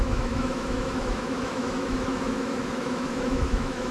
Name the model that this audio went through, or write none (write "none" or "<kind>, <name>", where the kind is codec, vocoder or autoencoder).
autoencoder, DAC-VAE